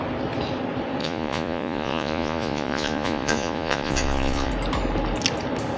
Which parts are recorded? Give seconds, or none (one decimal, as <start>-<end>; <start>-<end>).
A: 0.0-1.0; 4.5-5.8